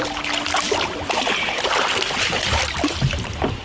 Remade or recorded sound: recorded